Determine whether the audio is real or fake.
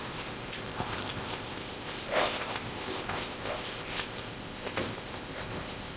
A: fake